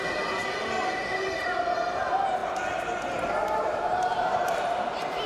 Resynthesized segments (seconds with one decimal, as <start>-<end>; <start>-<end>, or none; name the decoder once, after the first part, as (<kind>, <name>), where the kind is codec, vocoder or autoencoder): none